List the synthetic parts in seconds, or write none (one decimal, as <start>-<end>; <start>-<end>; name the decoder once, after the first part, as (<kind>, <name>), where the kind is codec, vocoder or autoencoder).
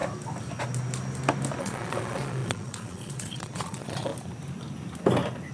1.6-4.1 (vocoder, Vocos)